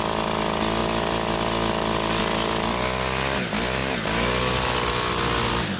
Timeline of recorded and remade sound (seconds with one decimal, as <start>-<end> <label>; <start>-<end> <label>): 0.0-5.8 recorded